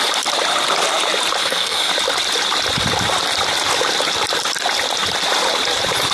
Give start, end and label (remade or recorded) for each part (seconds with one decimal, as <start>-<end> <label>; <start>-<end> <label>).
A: 0.0-1.4 recorded; 1.4-1.9 remade; 1.9-6.1 recorded